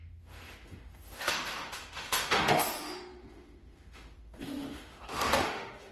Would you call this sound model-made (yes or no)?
yes